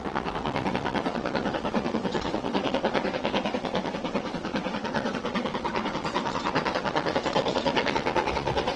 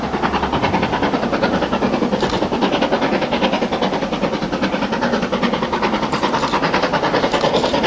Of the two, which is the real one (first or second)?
second